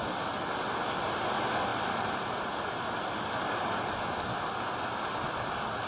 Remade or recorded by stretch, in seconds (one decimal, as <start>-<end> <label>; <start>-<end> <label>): 0.0-5.9 recorded